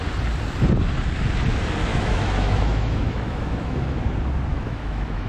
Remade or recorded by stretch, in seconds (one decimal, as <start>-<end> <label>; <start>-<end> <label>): 0.0-1.9 recorded; 1.9-4.0 remade; 4.0-4.5 recorded; 4.5-5.3 remade